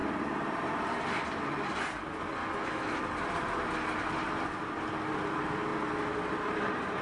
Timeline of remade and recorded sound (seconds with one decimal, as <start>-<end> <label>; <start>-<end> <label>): 0.0-2.4 recorded; 2.4-3.0 remade; 3.0-7.0 recorded